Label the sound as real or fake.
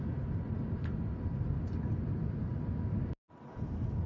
real